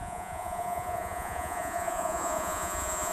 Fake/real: fake